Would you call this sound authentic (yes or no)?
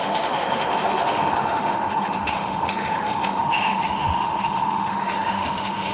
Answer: no